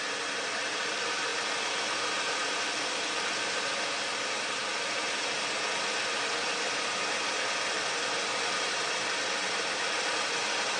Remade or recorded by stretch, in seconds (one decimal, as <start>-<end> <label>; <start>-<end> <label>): 0.0-1.3 recorded; 1.3-2.9 remade; 2.9-10.8 recorded